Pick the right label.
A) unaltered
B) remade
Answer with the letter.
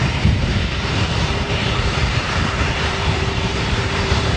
B